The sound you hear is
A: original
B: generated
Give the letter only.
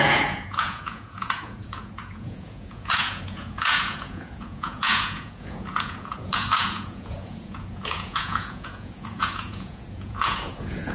B